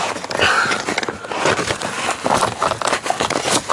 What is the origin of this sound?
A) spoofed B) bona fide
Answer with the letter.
B